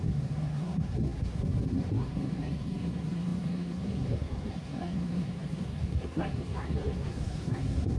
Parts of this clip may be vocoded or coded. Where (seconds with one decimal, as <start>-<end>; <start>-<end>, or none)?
0.0-8.0